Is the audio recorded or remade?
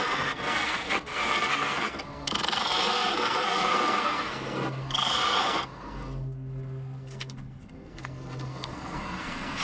remade